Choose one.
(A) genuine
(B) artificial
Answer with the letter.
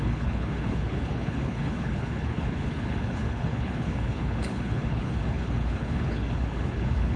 B